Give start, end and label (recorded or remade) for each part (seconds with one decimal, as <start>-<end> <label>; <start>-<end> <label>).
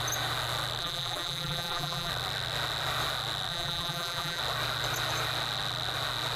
0.0-0.8 recorded; 0.8-2.1 remade; 2.1-3.5 recorded; 3.5-4.4 remade; 4.4-6.4 recorded